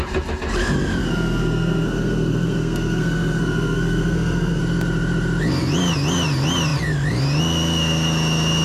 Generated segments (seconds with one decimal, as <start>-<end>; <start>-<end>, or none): 1.0-4.6